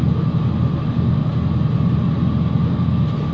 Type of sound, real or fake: real